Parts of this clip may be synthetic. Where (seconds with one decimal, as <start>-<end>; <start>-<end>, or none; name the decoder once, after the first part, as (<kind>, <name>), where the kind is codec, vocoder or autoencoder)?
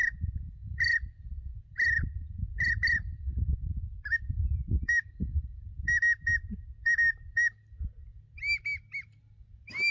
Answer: none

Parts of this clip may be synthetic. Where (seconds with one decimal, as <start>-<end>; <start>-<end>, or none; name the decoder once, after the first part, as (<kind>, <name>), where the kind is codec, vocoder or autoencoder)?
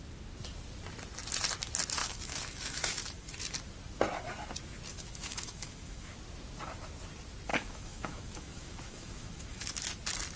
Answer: 2.0-3.3 (autoencoder, DAC-VAE); 4.9-6.1; 7.5-9.8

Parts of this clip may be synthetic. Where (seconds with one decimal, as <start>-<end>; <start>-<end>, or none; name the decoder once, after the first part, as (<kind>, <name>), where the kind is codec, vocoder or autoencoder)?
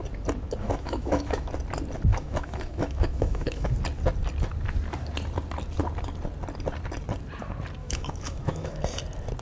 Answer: 0.6-1.5 (autoencoder, DAC-VAE); 2.1-3.7; 7.8-8.8